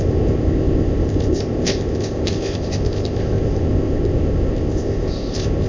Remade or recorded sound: remade